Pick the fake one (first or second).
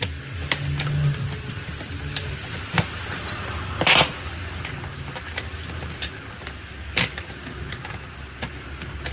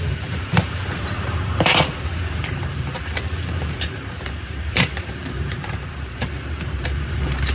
second